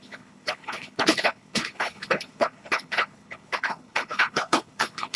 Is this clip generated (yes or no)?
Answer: yes